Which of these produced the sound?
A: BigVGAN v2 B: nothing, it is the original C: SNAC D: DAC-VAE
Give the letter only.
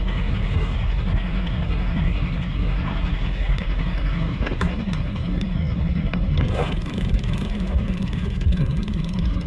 C